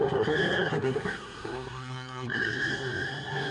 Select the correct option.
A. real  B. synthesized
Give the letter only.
B